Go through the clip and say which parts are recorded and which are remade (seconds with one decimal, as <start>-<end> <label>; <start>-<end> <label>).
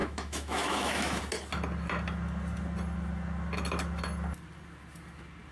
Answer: 0.0-1.2 remade; 1.2-5.5 recorded